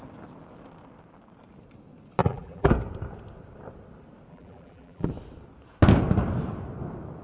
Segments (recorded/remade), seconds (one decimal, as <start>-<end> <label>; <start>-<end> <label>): 0.0-2.2 recorded; 2.2-2.7 remade; 2.7-4.3 recorded; 4.3-5.1 remade; 5.1-7.2 recorded